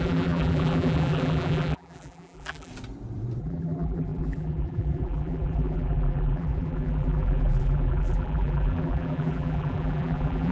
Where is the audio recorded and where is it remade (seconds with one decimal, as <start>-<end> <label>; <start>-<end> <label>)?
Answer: 0.0-2.7 remade; 2.7-3.4 recorded; 3.4-10.5 remade